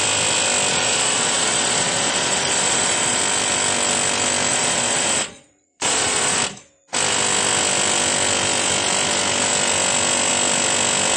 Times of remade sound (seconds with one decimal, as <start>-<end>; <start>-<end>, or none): 0.7-3.2; 4.5-6.4